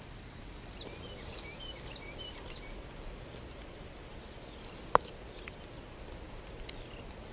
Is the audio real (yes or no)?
yes